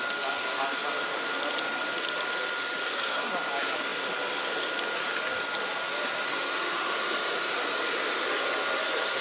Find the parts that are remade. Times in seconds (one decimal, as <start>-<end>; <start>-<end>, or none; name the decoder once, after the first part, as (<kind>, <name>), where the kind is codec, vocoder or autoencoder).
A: 2.8-3.3 (codec, SNAC)